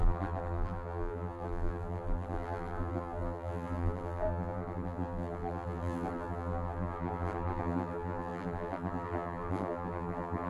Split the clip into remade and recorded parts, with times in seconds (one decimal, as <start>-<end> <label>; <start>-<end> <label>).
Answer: 0.0-10.5 remade